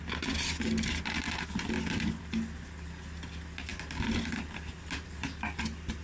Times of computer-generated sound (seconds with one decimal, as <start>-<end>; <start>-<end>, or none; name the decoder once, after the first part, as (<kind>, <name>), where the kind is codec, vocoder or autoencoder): none